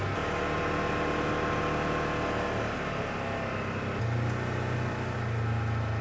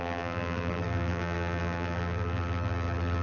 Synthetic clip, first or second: second